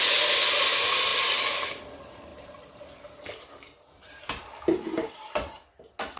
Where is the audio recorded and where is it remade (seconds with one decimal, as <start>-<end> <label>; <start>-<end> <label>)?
0.0-6.2 recorded